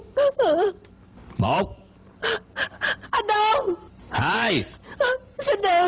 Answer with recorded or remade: remade